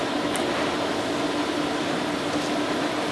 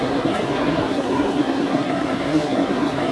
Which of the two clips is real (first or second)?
first